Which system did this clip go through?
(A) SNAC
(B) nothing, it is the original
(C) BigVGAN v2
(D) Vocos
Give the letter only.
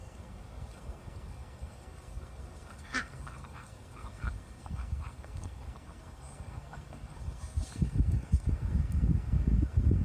A